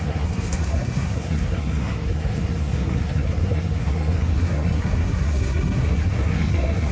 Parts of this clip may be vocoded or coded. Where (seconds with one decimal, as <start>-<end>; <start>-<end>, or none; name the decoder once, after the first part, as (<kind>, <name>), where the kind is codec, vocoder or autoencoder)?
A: 0.0-6.9 (codec, SNAC)